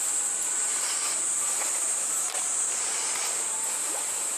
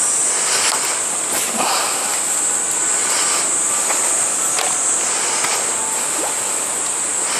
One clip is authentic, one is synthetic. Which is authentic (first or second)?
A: second